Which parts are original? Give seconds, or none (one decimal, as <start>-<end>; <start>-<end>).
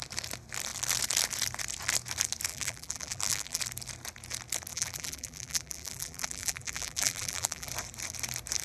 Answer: 0.0-2.5; 3.6-4.7; 7.7-8.6